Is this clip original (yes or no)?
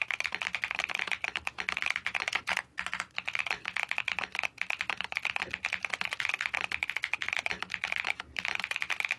yes